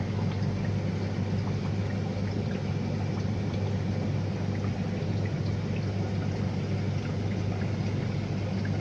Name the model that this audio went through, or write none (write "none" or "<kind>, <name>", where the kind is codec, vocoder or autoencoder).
none